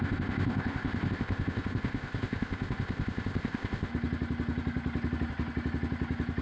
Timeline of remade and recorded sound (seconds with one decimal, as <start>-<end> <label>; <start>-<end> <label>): 0.0-3.9 remade; 3.9-6.4 recorded